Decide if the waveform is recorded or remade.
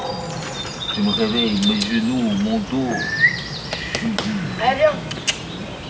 recorded